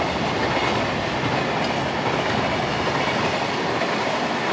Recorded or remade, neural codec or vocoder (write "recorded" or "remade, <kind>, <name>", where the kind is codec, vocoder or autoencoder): recorded